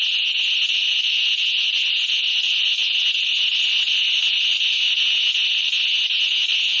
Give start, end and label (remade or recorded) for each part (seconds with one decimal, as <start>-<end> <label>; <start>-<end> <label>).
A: 0.0-6.8 recorded